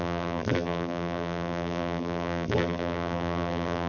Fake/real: fake